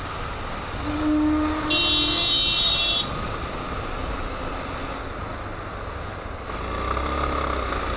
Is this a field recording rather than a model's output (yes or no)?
yes